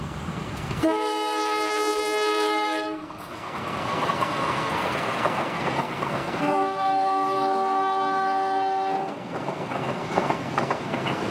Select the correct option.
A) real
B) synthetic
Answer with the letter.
B